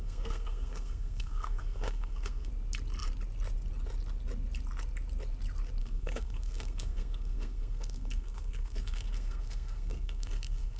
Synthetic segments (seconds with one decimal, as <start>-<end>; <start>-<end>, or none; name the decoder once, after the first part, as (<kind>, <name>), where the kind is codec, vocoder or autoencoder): 0.0-2.5 (codec, SNAC); 5.8-10.8